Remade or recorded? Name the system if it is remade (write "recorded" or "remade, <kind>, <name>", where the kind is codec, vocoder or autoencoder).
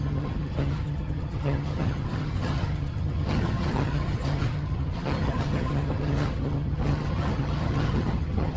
remade, vocoder, HiFi-GAN